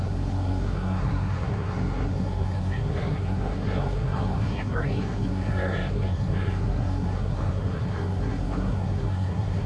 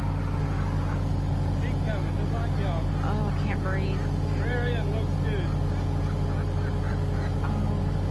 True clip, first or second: second